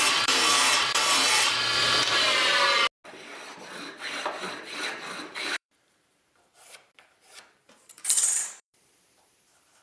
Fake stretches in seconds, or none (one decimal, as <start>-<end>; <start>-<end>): 0.0-2.5; 5.3-9.8